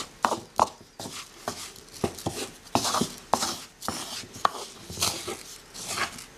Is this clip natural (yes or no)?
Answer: yes